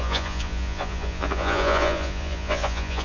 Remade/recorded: remade